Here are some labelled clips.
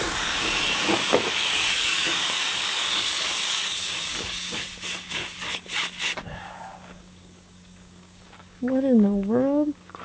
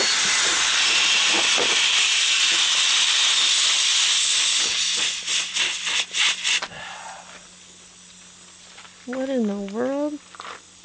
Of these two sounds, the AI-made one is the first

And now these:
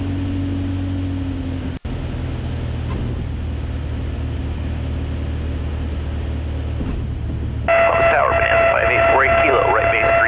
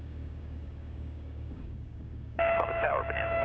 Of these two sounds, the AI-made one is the second